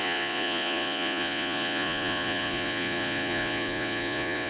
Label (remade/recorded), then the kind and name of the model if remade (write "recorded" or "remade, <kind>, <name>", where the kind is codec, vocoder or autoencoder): remade, vocoder, Vocos